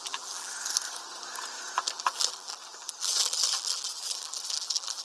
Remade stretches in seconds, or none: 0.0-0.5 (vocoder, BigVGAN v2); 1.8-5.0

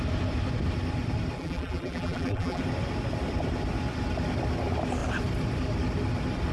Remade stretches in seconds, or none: 1.4-2.6 (vocoder, BigVGAN v2)